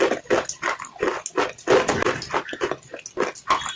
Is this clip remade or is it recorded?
recorded